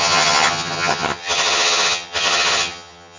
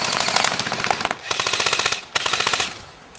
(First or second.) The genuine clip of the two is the second